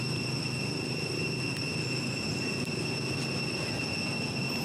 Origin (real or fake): real